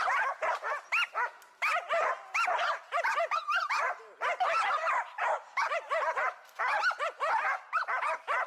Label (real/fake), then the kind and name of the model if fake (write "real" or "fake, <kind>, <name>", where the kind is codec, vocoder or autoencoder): real